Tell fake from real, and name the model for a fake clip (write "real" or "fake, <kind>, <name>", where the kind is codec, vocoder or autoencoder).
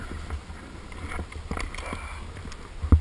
real